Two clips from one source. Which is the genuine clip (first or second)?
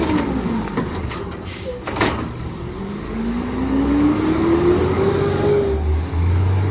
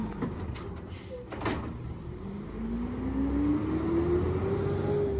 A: second